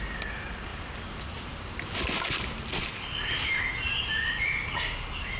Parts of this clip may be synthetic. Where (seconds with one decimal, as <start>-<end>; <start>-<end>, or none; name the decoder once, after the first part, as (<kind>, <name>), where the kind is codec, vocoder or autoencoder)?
none